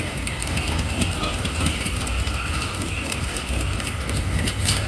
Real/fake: fake